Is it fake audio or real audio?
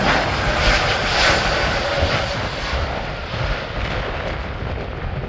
real